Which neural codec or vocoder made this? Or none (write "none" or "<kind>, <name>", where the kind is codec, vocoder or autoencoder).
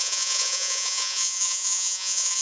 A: vocoder, Vocos